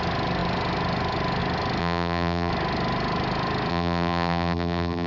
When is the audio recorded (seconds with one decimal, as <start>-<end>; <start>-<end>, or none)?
0.0-1.8; 2.5-3.7